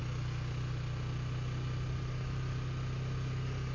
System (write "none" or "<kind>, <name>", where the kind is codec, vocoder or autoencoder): none